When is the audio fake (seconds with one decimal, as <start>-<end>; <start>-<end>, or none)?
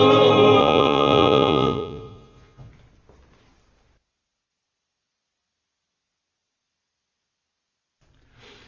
0.6-2.7